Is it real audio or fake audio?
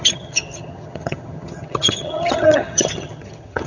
fake